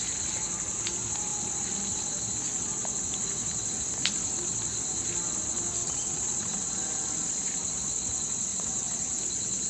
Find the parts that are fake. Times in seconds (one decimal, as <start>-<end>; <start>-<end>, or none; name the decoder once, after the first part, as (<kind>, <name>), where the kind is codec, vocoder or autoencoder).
5.8-6.7 (vocoder, WaveNeXt); 8.5-9.2